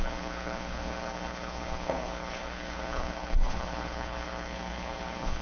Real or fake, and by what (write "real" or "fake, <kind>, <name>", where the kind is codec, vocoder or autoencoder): fake, codec, HILCodec